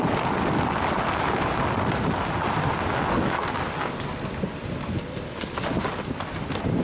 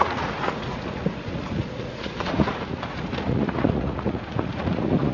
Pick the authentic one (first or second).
first